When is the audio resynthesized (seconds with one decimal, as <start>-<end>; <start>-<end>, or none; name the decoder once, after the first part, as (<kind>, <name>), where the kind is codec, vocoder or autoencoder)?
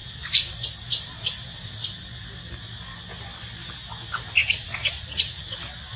4.4-5.4 (vocoder, Vocos)